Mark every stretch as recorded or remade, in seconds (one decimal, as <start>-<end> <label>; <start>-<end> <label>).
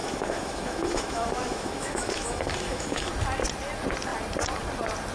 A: 0.0-3.1 remade; 3.1-5.1 recorded